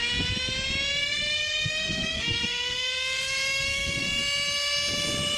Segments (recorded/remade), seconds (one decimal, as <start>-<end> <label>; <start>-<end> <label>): 0.0-1.0 recorded; 1.0-4.2 remade; 4.2-5.4 recorded